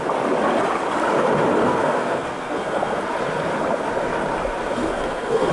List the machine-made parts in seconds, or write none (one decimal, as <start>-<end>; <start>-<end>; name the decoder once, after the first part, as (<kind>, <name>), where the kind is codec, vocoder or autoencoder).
1.6-3.0 (codec, SNAC); 4.8-5.5